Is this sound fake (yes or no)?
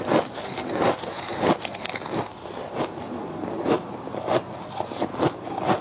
no